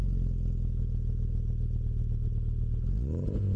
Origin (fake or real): real